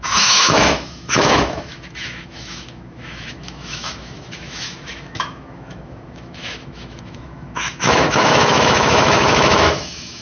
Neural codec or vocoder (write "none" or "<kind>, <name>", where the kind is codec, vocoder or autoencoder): autoencoder, DAC-VAE